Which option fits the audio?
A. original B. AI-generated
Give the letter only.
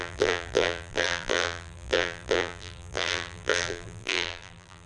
B